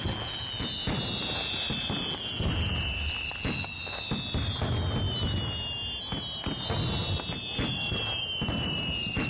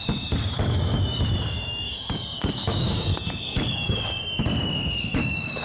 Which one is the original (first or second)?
first